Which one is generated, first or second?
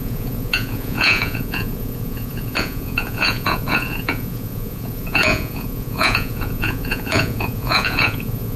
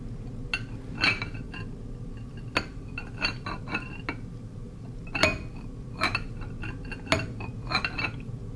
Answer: first